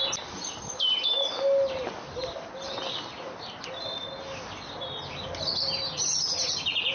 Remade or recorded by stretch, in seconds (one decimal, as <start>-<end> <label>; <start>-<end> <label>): 0.0-6.9 recorded